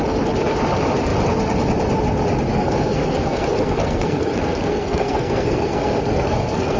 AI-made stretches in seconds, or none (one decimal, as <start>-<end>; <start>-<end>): 2.5-6.8